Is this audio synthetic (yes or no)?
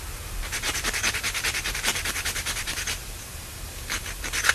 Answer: yes